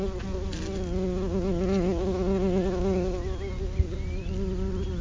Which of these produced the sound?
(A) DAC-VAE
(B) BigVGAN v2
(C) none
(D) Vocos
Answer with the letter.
C